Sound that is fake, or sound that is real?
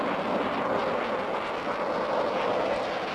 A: real